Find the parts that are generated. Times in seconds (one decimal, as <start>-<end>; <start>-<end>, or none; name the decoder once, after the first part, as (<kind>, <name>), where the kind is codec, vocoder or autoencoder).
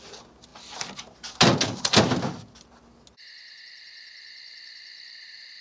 none